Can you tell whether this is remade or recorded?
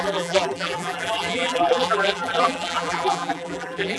remade